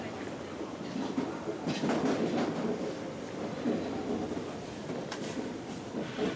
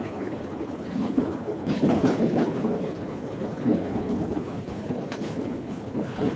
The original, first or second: first